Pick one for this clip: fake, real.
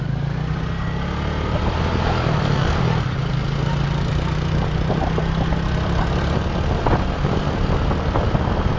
real